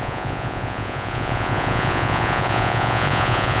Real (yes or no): no